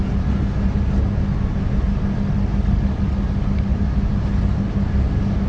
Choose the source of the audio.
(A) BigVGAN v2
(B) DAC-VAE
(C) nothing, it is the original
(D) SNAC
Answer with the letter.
C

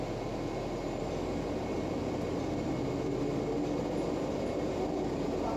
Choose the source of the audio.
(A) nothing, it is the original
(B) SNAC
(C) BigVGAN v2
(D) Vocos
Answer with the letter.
A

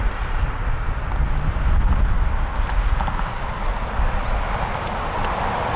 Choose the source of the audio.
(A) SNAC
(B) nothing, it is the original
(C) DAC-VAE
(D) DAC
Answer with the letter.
B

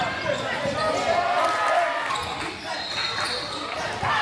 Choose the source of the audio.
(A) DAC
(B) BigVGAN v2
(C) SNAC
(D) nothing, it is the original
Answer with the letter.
D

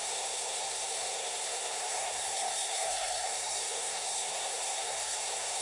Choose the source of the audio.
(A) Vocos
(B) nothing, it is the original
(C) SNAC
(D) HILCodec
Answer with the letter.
C